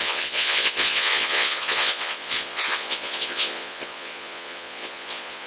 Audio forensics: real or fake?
fake